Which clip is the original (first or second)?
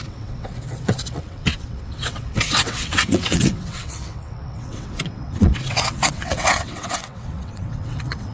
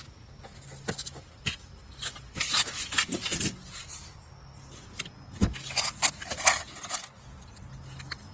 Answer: second